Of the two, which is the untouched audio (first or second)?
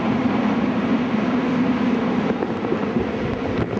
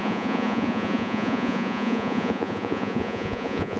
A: first